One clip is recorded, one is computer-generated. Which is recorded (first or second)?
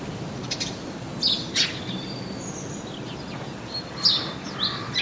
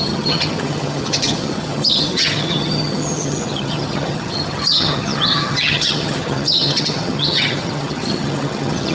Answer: first